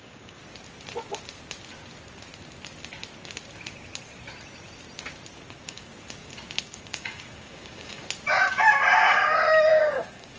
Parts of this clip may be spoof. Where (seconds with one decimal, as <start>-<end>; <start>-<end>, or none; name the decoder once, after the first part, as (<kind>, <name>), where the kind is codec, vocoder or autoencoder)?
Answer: 0.0-0.4 (codec, DAC); 5.5-5.9; 6.6-8.0; 9.7-10.4